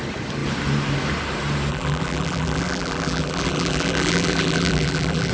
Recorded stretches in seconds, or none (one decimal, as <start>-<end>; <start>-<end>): 0.0-1.7